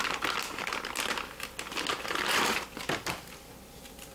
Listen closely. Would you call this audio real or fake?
real